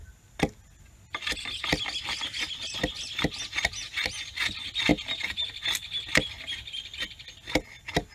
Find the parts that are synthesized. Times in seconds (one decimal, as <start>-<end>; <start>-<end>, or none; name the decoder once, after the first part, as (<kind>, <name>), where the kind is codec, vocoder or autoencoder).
none